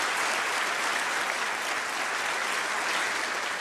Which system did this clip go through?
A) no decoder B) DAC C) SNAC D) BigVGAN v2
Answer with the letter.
A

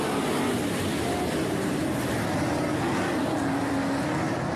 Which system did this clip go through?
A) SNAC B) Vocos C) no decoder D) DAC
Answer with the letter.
C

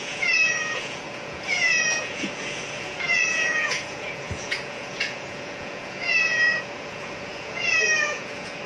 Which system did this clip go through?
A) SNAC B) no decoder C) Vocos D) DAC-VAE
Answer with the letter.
C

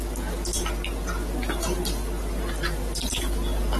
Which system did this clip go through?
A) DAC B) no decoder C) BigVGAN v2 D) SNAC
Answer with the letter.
B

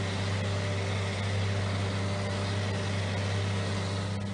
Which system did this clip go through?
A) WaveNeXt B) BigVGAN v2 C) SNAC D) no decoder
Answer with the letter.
D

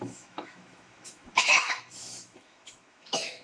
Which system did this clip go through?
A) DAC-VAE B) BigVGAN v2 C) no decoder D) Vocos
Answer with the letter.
A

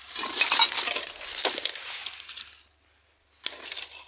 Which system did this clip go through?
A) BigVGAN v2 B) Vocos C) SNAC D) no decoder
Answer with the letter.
D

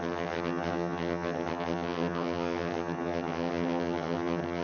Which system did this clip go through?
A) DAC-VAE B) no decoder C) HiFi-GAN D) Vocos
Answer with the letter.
C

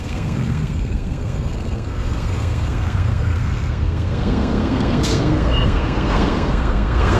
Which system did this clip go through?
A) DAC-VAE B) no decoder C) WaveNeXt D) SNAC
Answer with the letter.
D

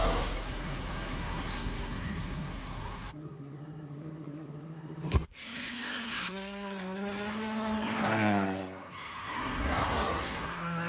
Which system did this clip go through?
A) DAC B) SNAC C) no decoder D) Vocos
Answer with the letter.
B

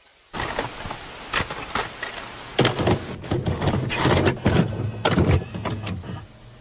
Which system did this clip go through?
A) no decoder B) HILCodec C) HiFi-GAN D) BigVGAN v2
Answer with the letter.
A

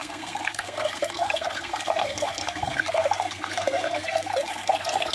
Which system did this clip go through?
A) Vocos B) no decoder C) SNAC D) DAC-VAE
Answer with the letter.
C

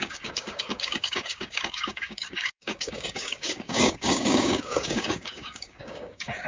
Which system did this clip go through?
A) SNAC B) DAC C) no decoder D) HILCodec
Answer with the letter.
B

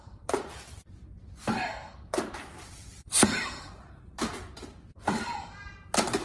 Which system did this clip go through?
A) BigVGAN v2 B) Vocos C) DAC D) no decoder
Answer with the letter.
A